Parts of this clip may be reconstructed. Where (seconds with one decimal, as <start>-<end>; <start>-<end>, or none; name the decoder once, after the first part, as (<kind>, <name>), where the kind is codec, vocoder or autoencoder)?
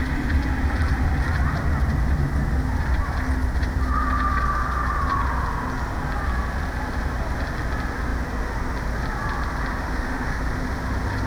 9.7-10.4 (autoencoder, DAC-VAE)